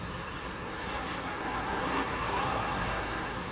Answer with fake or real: fake